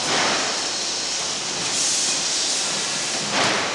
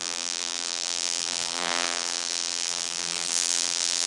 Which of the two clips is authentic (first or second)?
first